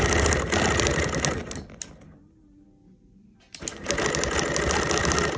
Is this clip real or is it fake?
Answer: real